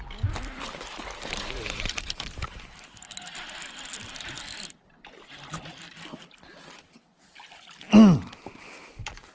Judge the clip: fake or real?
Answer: real